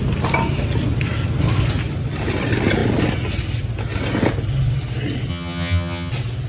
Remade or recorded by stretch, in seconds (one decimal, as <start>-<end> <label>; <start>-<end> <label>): 0.0-5.3 recorded; 5.3-6.1 remade; 6.1-6.5 recorded